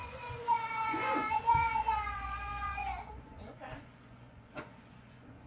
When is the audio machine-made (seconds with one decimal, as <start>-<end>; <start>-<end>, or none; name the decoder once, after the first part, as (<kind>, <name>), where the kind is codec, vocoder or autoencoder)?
0.0-5.5 (vocoder, Vocos)